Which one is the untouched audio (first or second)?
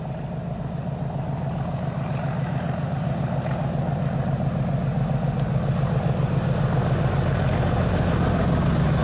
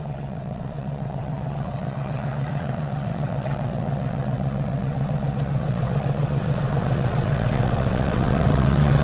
first